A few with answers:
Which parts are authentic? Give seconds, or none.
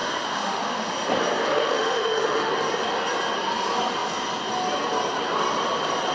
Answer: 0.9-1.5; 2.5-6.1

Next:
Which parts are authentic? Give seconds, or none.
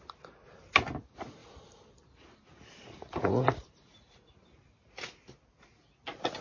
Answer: 0.0-1.4; 5.2-6.4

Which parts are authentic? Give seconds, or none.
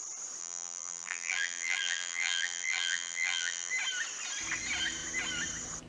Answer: 0.0-0.4; 3.7-5.9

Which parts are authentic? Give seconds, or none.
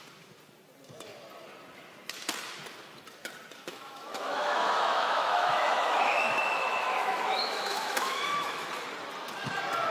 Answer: 0.0-3.7; 8.7-9.9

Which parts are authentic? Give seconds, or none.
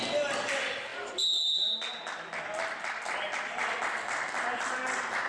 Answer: 0.0-5.3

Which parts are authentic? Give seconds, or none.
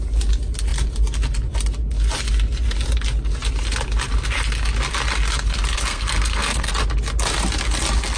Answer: 0.0-5.9; 6.7-8.2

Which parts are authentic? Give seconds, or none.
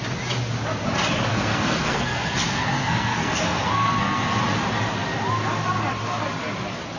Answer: 0.0-1.3; 4.3-7.0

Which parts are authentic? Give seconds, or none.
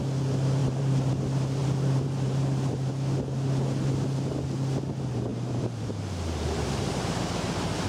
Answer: 0.0-0.6; 1.1-1.6; 2.9-5.3; 7.1-7.9